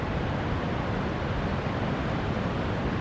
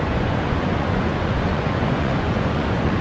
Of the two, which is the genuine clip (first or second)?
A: first